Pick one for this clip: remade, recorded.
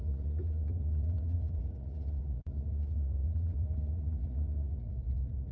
remade